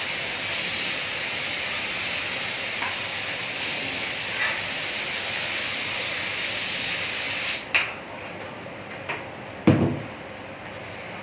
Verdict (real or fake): real